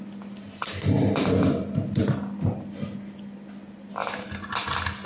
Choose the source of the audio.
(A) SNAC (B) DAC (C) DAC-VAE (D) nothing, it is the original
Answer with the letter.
D